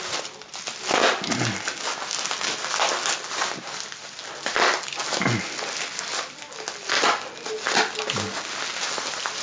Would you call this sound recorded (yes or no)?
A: yes